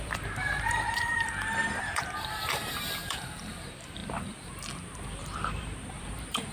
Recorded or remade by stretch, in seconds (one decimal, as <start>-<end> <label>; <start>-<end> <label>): 0.0-4.0 remade; 4.0-5.2 recorded; 5.2-6.5 remade